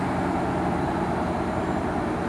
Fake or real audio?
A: real